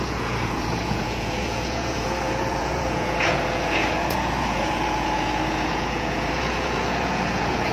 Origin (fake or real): fake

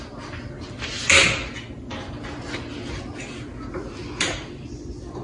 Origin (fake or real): real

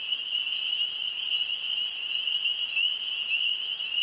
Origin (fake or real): real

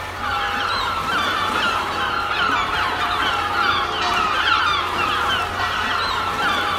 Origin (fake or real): fake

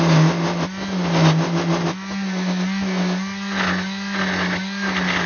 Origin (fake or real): real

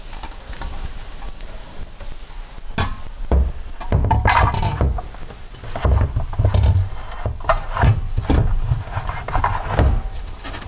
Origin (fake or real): real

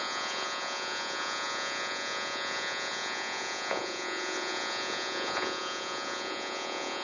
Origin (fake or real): fake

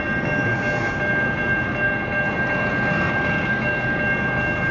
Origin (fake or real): real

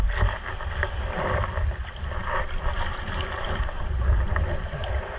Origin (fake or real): real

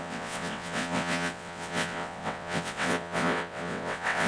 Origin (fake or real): fake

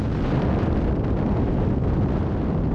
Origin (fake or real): real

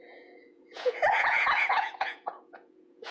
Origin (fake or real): fake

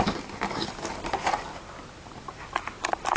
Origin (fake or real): real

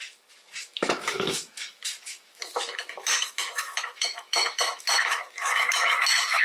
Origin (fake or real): fake